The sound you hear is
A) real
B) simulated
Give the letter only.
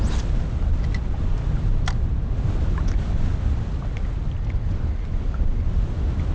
A